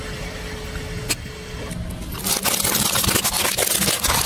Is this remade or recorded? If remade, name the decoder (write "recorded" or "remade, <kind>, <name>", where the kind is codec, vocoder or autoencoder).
recorded